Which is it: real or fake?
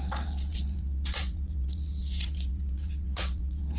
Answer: fake